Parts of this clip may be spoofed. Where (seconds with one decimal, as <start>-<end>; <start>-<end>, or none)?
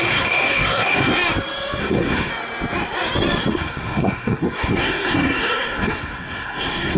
0.0-1.1; 1.8-2.3; 3.5-7.0